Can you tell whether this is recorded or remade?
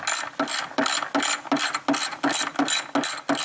recorded